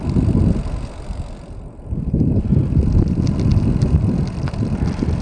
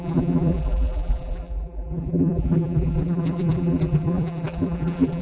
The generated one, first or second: second